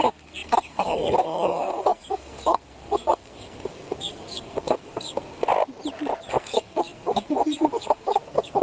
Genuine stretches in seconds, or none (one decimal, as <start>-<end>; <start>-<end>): 5.5-6.3